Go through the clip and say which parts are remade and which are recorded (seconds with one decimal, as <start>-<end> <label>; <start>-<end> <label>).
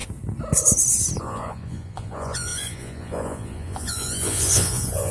0.0-1.2 recorded; 1.2-5.1 remade